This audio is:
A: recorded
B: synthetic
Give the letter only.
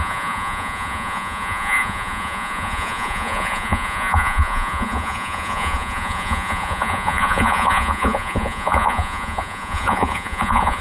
B